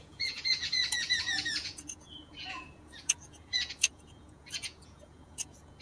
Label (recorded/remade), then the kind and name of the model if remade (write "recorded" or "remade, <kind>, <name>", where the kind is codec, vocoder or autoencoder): remade, vocoder, Vocos